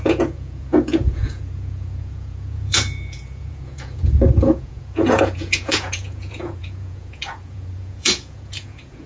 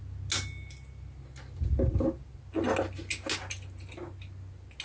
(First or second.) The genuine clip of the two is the second